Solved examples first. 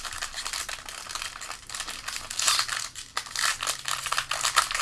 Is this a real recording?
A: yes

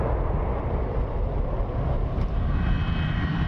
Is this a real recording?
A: yes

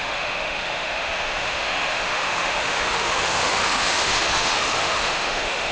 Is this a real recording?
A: no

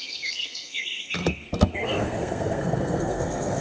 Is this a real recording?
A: no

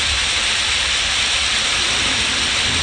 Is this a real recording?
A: yes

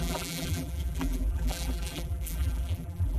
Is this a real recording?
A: no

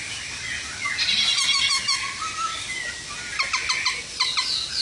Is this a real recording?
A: yes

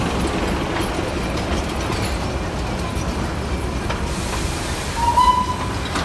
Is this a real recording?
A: yes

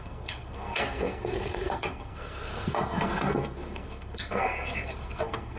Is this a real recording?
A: no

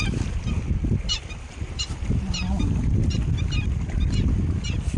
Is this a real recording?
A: yes